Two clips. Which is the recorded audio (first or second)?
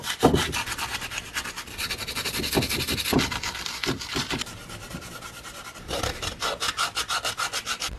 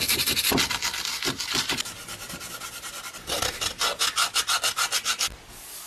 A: second